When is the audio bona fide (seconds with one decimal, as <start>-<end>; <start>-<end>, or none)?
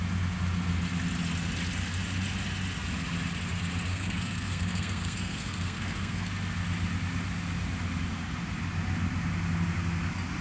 0.0-3.9; 6.3-10.4